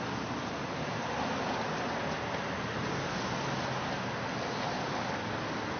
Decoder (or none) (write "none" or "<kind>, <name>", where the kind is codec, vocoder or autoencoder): none